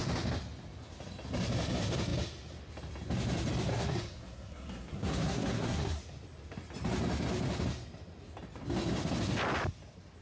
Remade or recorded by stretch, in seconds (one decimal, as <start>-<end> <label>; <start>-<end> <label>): 0.0-3.7 recorded; 3.7-6.0 remade; 6.0-10.2 recorded